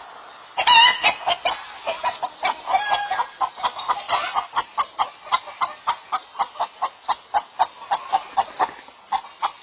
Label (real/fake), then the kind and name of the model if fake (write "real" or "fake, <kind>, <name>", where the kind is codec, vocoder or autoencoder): real